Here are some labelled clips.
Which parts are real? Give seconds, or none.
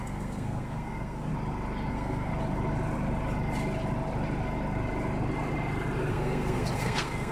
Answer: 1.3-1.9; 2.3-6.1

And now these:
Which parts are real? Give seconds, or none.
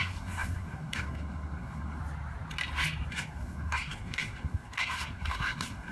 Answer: 2.0-3.1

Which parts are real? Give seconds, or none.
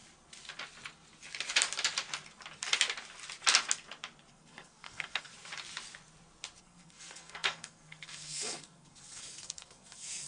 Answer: 0.0-4.3; 5.3-6.6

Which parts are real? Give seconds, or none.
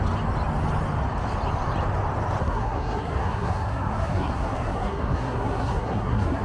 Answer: 0.0-2.4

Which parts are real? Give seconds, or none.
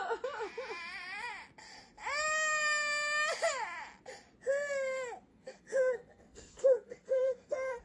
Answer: 0.0-5.3